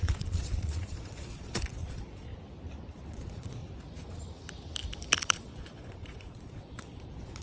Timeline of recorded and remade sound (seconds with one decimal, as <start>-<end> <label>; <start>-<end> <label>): 0.0-2.3 remade; 2.3-3.1 recorded; 3.1-3.6 remade; 3.6-5.2 recorded; 5.2-7.4 remade